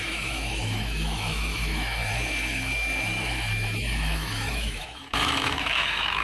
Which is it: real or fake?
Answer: fake